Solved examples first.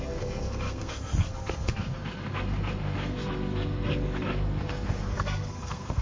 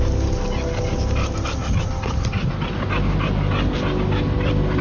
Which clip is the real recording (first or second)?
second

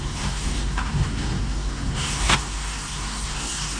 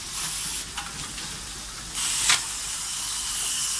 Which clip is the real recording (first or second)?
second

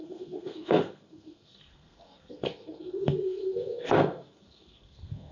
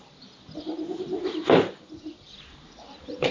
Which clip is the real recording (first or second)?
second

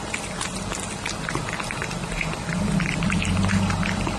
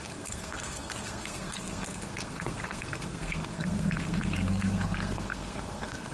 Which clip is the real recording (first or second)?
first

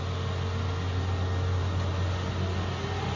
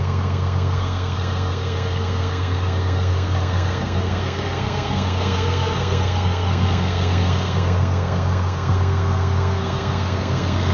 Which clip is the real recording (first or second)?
first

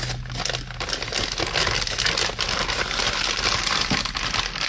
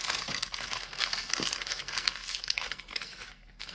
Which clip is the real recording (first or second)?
first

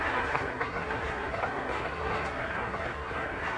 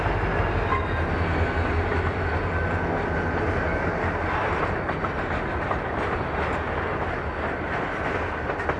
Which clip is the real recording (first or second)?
second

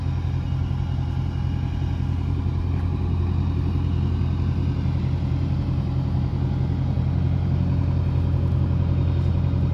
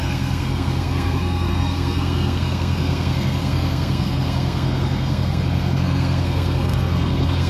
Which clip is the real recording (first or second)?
first